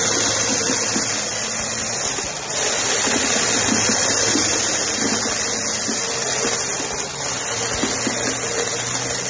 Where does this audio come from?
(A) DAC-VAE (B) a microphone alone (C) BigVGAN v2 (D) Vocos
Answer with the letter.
B